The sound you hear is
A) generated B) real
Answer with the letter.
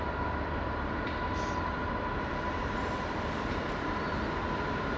B